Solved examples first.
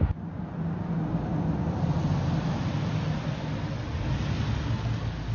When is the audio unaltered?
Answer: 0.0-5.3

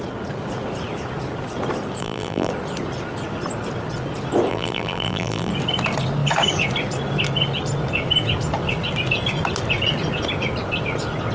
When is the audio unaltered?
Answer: 0.0-2.0; 2.5-4.5; 5.5-11.3

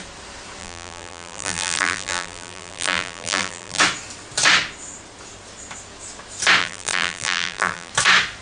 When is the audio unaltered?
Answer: 0.0-0.6; 3.8-6.6; 7.9-8.4

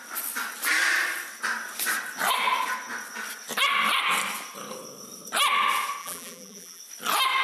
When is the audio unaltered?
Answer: 0.0-6.0; 6.8-7.4

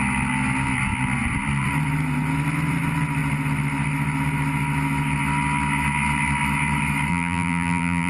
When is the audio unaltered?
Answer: 0.0-7.1

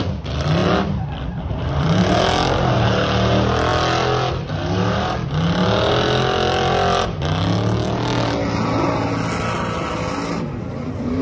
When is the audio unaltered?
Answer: 0.0-0.6; 2.2-11.2

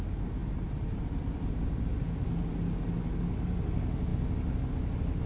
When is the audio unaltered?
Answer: 0.0-0.4; 1.8-5.3